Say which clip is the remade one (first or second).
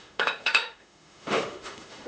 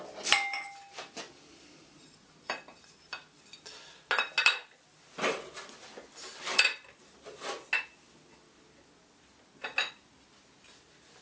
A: first